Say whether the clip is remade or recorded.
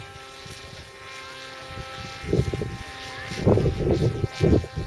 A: recorded